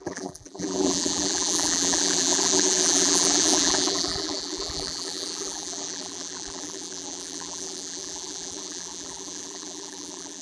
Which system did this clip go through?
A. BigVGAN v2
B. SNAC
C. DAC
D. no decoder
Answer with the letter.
A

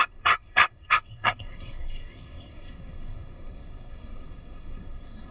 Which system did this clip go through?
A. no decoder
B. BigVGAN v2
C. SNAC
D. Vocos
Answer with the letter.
C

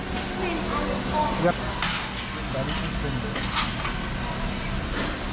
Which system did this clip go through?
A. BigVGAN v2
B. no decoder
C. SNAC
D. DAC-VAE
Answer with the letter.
B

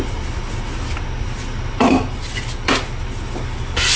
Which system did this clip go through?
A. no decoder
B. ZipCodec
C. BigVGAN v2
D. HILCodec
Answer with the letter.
A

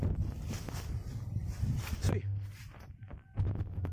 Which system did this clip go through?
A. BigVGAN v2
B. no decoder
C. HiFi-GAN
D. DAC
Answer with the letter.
B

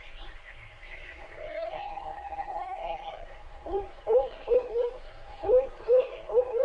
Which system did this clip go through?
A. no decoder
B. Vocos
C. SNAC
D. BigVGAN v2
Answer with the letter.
C